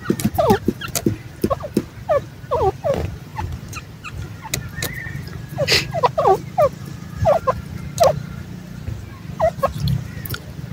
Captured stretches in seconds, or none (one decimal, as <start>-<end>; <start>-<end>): 0.0-3.3; 4.5-7.2; 7.7-10.1